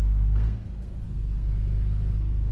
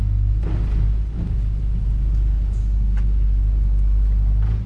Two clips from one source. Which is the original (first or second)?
second